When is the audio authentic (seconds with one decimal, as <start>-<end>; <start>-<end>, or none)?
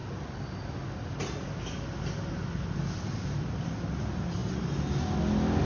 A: 0.0-5.6